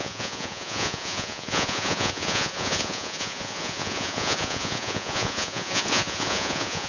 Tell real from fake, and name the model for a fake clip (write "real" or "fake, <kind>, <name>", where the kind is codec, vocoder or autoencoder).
fake, vocoder, Vocos